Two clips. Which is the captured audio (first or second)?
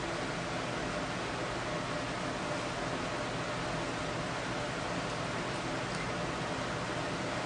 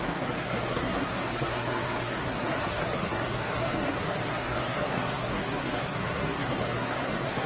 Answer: first